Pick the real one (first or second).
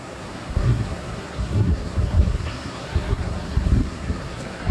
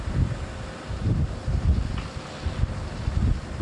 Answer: second